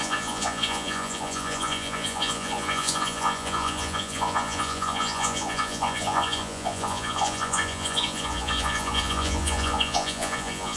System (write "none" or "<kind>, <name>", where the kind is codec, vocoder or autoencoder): vocoder, Vocos